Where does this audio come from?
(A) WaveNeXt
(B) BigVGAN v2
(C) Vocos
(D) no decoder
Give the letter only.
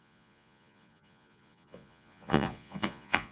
C